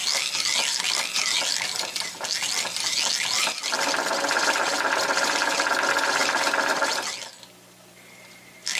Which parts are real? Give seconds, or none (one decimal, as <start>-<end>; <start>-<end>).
0.0-8.8